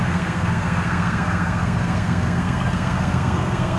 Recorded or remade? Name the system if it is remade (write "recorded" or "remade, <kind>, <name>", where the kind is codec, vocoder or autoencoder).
remade, codec, SNAC